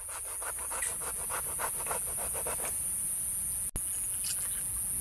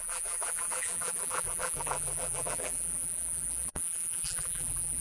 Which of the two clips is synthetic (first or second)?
second